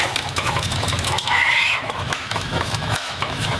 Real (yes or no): no